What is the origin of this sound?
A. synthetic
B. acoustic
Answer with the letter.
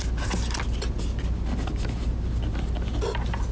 B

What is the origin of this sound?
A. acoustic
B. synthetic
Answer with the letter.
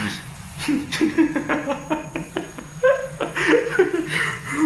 B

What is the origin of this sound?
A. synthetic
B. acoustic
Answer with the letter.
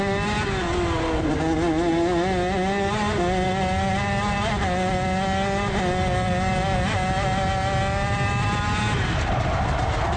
B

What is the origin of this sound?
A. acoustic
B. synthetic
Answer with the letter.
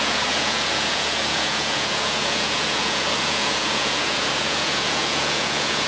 B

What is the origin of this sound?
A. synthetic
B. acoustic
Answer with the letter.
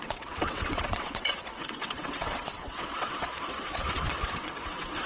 A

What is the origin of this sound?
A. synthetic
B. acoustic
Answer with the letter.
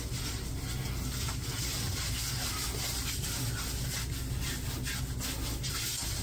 B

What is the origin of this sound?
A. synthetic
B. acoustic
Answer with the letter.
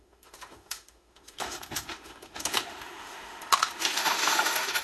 A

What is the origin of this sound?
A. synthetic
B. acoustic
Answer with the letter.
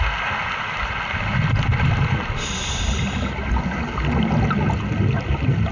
B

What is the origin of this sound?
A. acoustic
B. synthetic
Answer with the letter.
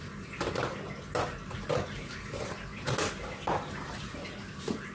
A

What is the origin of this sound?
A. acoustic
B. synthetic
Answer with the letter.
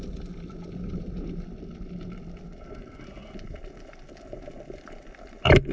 A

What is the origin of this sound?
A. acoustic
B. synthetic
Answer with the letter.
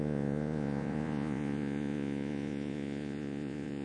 B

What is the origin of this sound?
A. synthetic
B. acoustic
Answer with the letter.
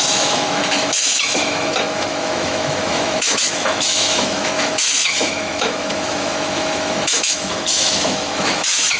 A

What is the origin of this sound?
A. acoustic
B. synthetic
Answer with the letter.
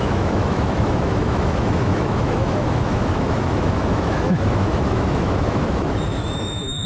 B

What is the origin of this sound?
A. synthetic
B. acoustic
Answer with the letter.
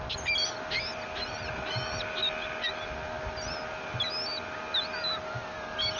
B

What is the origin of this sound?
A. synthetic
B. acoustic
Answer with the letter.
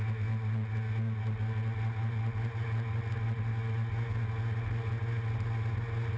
B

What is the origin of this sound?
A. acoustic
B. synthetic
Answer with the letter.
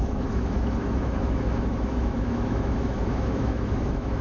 B